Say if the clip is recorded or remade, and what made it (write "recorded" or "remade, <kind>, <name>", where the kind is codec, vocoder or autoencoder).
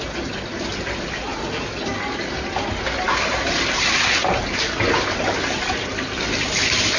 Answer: recorded